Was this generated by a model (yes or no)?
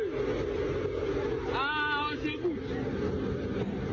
no